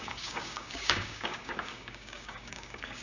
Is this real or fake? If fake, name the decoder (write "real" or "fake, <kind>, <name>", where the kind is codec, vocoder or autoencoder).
fake, codec, DAC